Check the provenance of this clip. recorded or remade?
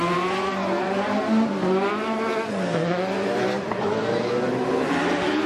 recorded